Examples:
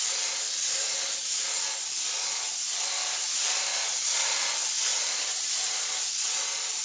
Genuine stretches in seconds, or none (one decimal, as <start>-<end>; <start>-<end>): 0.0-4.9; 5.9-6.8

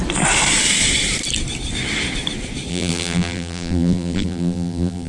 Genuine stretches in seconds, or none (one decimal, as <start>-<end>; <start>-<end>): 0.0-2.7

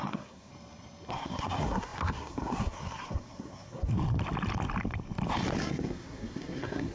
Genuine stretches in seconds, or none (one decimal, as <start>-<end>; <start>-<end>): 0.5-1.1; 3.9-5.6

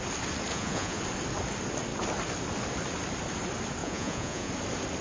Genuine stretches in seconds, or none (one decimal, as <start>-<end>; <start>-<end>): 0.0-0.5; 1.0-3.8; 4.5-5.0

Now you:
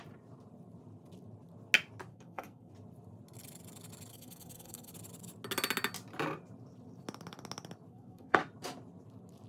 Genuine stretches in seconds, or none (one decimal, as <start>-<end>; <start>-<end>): 0.0-2.1; 2.7-4.1; 4.9-7.9; 8.4-9.5

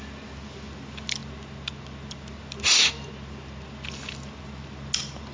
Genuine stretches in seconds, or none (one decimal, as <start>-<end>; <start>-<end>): 0.0-5.3